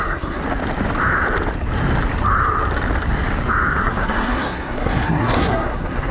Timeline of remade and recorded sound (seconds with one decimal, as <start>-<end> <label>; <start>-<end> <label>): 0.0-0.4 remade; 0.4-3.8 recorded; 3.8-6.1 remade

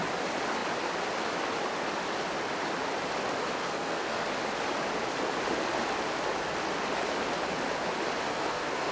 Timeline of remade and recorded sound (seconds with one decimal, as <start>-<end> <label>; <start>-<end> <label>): 0.0-3.6 recorded; 3.6-4.3 remade; 4.3-8.3 recorded; 8.3-8.9 remade

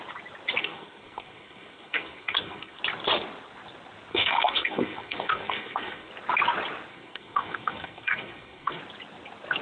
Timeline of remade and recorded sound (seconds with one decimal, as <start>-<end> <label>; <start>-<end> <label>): 0.0-0.6 recorded; 0.6-2.8 remade; 2.8-4.1 recorded; 4.1-6.1 remade; 6.1-6.9 recorded; 6.9-8.8 remade; 8.8-9.6 recorded

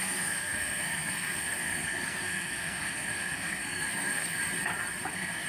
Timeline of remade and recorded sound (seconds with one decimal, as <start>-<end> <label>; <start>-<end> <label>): 0.0-4.4 remade; 4.4-5.1 recorded; 5.1-5.5 remade

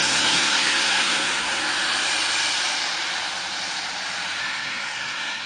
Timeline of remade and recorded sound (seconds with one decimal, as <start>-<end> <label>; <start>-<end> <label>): 0.0-1.6 remade; 1.6-4.4 recorded; 4.4-5.5 remade

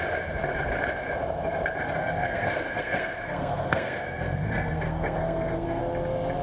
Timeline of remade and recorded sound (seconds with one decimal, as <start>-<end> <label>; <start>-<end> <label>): 0.0-2.0 recorded; 2.0-5.8 remade; 5.8-6.4 recorded

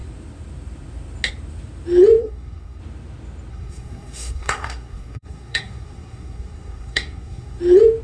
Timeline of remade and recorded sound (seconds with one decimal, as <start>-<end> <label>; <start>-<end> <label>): 0.0-2.2 recorded; 2.2-2.8 remade; 2.8-3.5 recorded; 3.5-7.6 remade; 7.6-8.0 recorded